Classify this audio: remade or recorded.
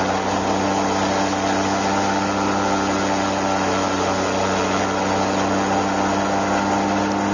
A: recorded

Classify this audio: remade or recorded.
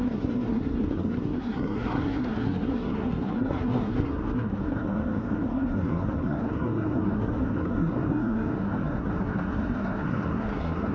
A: remade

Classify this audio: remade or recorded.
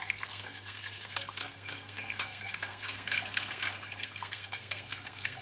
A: remade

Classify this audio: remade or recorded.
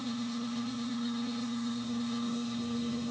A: remade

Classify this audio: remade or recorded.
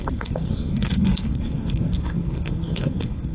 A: remade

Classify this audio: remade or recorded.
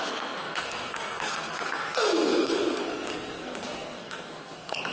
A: remade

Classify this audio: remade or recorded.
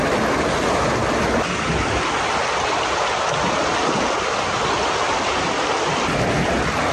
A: recorded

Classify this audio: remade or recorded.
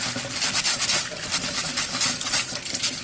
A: recorded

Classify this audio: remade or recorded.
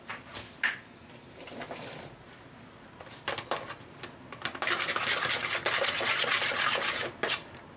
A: recorded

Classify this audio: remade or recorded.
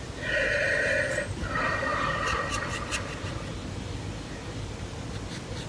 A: recorded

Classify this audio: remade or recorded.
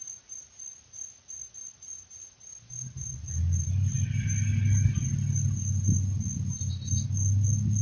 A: recorded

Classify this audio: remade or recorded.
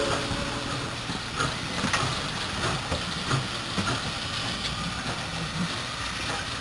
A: recorded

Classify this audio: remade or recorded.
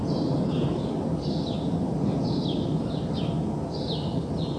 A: recorded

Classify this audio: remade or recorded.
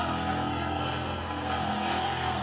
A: remade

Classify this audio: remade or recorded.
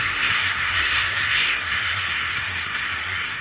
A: remade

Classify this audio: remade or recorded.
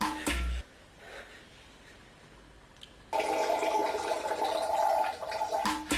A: recorded